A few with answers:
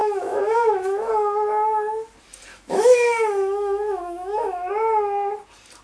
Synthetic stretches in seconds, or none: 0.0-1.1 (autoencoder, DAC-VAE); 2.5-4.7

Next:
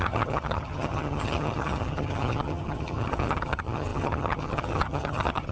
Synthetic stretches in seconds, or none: 0.0-5.5 (vocoder, HiFi-GAN)

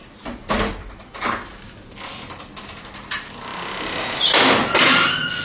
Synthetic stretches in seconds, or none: none

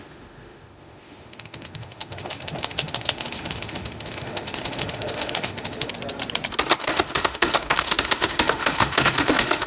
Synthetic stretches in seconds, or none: 0.0-5.9 (autoencoder, DAC-VAE); 6.8-9.7

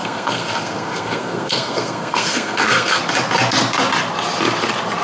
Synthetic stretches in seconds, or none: 0.0-3.0 (codec, SNAC)

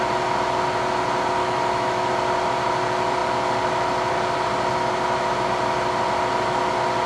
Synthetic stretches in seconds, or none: 1.4-2.1 (autoencoder, DAC-VAE)

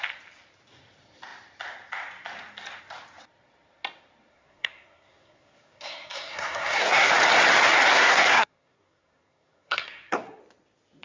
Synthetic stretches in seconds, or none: 4.3-7.1 (codec, SNAC); 7.9-10.4

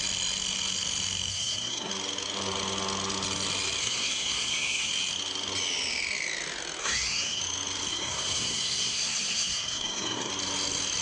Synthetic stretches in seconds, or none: 1.3-1.9 (codec, SNAC); 3.8-4.9; 6.8-7.4; 7.9-10.3